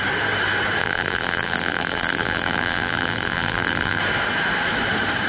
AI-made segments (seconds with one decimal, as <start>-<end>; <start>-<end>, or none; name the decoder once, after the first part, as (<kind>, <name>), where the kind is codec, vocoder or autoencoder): 0.8-4.0 (vocoder, BigVGAN v2)